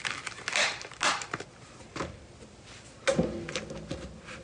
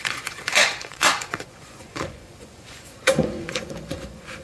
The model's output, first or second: second